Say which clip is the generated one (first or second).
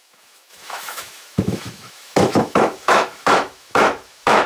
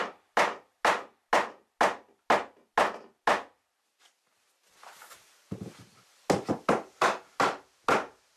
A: first